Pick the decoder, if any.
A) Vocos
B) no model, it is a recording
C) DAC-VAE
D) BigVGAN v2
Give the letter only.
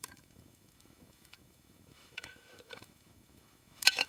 C